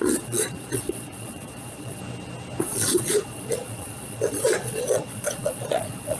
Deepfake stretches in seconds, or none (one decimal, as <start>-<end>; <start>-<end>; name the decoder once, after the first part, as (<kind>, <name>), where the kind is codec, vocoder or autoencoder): 0.0-2.0 (vocoder, Vocos); 2.6-6.2